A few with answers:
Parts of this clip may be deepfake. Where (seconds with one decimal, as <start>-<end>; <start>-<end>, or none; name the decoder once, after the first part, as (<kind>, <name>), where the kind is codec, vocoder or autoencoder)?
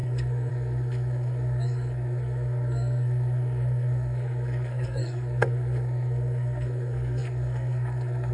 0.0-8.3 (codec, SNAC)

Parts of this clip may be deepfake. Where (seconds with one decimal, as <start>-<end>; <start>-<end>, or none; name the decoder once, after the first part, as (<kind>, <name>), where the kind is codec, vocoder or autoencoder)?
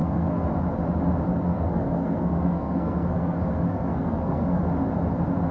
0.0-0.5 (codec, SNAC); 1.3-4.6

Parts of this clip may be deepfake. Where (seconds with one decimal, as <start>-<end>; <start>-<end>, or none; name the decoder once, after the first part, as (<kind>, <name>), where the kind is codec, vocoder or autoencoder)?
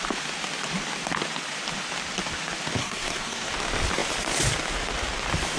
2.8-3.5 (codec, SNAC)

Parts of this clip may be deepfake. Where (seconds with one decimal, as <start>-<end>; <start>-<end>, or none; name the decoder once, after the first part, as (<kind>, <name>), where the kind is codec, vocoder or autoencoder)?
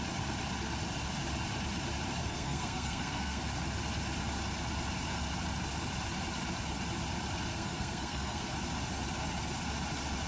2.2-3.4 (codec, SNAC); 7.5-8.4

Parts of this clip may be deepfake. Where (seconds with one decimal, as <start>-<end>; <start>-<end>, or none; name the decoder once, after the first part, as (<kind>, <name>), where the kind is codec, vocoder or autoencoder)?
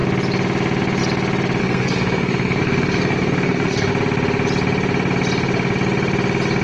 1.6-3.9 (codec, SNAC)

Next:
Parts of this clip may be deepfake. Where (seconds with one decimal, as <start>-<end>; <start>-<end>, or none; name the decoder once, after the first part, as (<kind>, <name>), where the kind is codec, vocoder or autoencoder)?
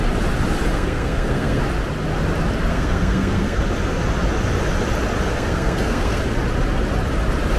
0.7-1.6 (codec, SNAC); 2.7-3.6; 5.3-6.2